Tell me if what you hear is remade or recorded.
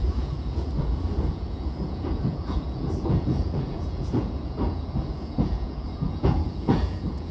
remade